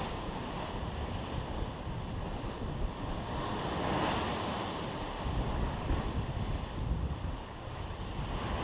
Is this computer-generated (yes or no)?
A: no